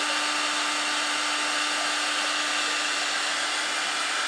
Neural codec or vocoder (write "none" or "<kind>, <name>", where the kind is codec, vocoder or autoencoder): none